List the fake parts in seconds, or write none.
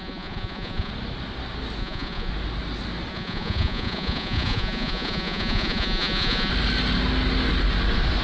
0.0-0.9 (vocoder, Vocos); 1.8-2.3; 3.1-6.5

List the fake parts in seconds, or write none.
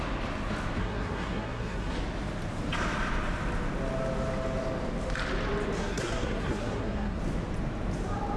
0.8-2.0 (codec, SNAC); 5.8-7.2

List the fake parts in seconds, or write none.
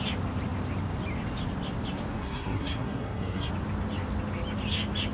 2.2-3.5 (codec, SNAC)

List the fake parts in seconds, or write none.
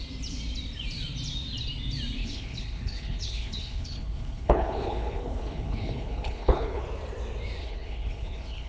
2.2-6.8 (codec, HILCodec); 7.6-8.7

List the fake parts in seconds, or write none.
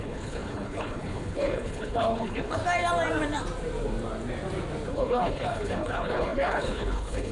0.0-2.6 (codec, HILCodec); 4.9-7.3